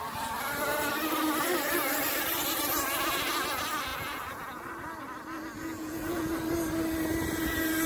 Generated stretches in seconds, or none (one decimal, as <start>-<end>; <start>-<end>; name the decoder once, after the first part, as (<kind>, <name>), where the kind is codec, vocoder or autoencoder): 3.9-4.6 (vocoder, Vocos); 5.6-6.3

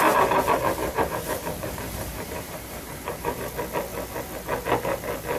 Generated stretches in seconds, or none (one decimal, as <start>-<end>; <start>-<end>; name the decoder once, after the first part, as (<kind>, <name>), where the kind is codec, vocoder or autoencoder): 0.8-3.3 (vocoder, BigVGAN v2)